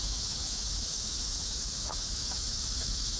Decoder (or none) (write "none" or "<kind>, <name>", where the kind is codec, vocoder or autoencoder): autoencoder, DAC-VAE